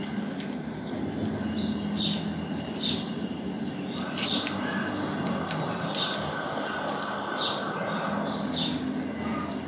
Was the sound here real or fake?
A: real